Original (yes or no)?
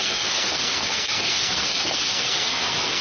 no